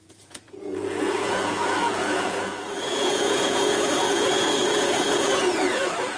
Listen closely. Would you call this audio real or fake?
fake